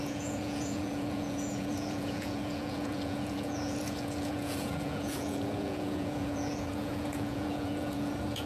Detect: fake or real fake